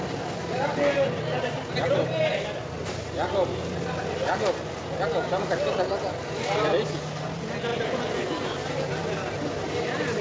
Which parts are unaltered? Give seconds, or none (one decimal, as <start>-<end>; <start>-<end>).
0.0-10.2